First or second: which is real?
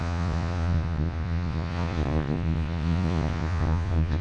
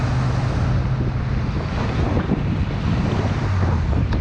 second